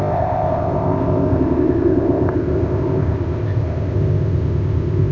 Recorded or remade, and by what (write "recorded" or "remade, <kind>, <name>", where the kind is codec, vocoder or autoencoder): remade, codec, ZipCodec